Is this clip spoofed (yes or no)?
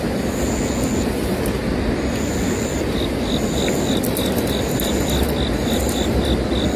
no